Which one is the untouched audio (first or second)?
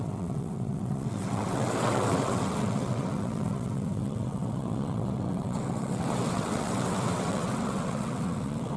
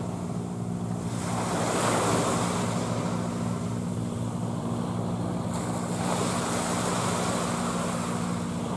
second